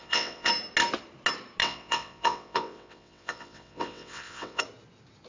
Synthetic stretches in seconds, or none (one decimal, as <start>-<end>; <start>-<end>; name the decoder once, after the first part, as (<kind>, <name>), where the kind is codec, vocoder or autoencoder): 0.0-0.5 (vocoder, WaveNeXt); 1.6-4.6